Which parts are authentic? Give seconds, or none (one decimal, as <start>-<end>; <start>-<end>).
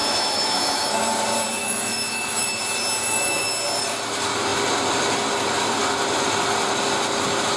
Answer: 1.0-1.6; 2.6-3.0; 3.5-7.6